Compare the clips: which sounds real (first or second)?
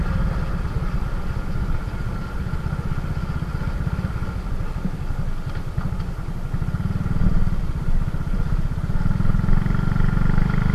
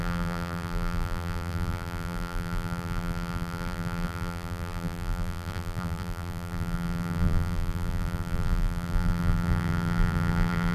first